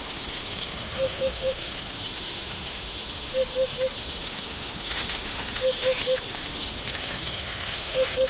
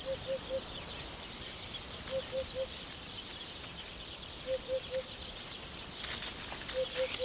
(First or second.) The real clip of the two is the second